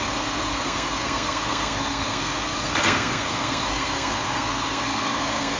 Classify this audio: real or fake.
fake